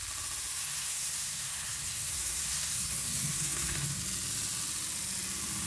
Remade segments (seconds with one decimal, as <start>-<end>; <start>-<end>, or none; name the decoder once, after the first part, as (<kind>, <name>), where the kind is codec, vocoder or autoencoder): 0.6-4.0 (codec, SNAC)